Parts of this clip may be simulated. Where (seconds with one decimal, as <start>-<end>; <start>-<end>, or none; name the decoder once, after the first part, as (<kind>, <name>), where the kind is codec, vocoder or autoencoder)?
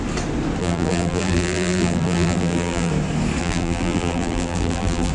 0.6-2.9 (vocoder, BigVGAN v2); 3.4-5.1